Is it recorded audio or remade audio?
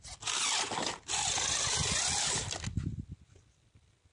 recorded